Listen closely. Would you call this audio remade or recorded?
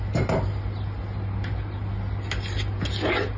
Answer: recorded